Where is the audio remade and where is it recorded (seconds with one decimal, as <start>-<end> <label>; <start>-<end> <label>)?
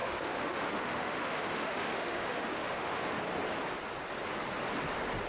0.0-3.2 remade; 3.2-5.3 recorded